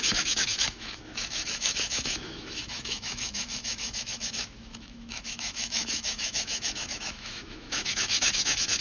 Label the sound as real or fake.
fake